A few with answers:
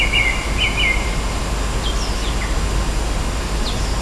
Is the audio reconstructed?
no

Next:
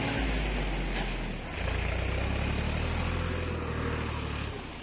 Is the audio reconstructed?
no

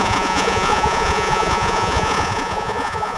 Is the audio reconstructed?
yes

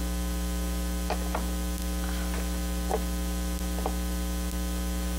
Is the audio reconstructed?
no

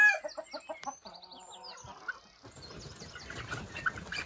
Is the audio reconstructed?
no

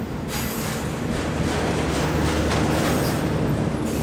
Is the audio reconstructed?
no